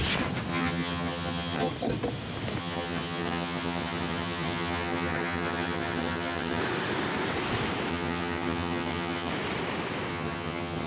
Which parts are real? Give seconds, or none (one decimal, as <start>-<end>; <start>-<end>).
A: 0.0-0.5; 1.7-2.6; 6.6-7.9; 9.3-10.1